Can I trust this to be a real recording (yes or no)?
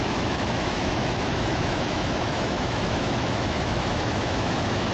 no